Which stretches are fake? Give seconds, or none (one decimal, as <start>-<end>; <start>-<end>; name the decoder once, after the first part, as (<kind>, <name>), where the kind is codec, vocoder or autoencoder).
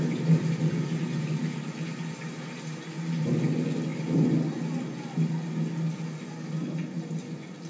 none